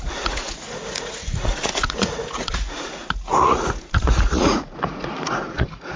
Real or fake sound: fake